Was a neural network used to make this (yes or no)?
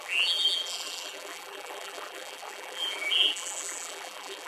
yes